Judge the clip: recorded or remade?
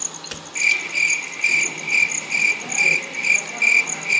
recorded